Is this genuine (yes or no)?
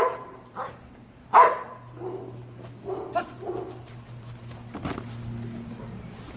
yes